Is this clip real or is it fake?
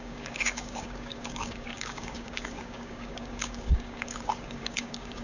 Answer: fake